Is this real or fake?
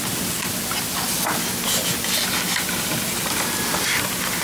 real